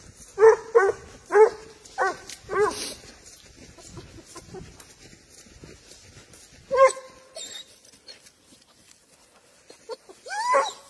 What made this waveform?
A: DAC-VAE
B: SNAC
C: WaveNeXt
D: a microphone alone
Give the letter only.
D